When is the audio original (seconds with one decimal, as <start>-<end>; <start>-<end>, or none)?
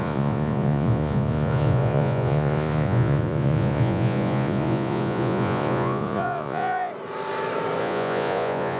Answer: 6.9-7.8